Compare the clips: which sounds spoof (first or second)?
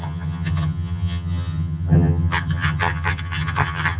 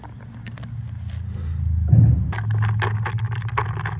first